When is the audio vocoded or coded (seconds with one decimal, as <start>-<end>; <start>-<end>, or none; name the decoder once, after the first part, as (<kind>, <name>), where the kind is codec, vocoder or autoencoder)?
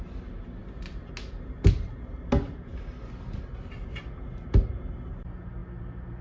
none